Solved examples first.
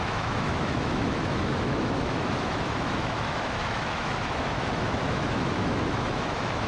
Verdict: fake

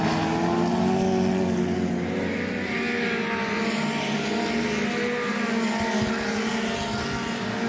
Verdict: real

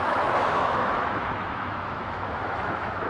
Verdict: fake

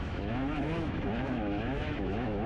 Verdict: fake